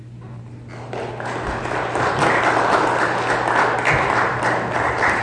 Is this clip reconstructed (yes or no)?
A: no